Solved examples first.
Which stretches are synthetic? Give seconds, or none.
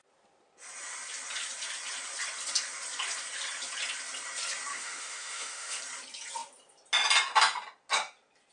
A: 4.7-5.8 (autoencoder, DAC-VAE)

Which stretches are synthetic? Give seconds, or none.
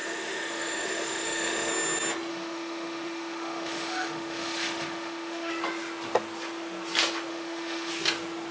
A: 0.0-1.7 (autoencoder, DAC-VAE); 2.3-5.5; 7.3-7.9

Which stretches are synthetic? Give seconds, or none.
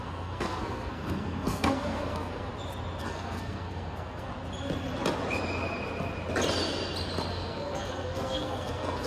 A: 0.0-2.5 (codec, SNAC); 3.0-4.3; 7.3-9.1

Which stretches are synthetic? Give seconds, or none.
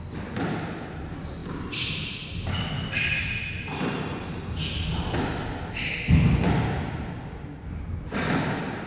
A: none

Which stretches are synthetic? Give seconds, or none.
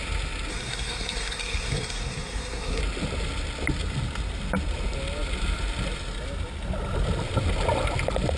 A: 0.5-2.8 (codec, SNAC)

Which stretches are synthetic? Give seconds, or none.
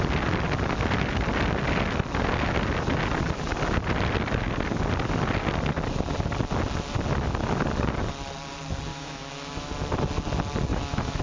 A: 8.9-9.7 (autoencoder, DAC-VAE); 10.7-11.2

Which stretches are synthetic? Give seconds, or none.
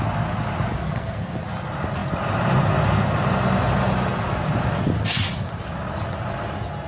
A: 0.8-1.4 (codec, SNAC)